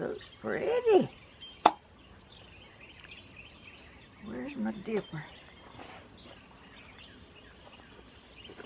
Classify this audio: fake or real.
real